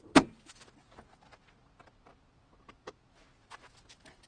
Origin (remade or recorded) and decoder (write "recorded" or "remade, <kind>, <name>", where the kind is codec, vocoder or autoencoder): recorded